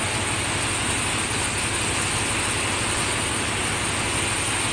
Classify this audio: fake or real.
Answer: real